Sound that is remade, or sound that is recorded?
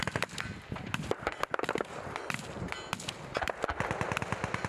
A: recorded